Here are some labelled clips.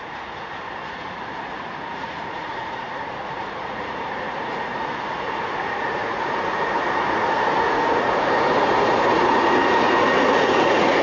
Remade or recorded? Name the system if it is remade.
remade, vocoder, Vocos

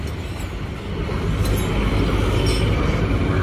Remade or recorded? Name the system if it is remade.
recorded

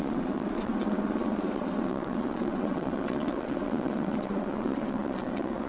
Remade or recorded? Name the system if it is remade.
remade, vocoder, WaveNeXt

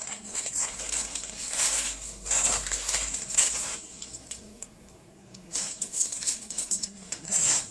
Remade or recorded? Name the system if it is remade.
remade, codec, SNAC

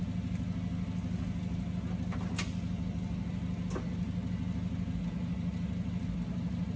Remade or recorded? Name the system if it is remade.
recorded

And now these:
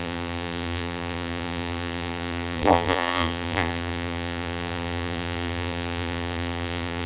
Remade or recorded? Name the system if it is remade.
remade, vocoder, BigVGAN v2